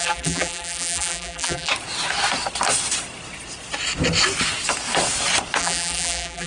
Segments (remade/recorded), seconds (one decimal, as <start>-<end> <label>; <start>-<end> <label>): 0.0-1.7 remade; 1.7-5.6 recorded; 5.6-6.5 remade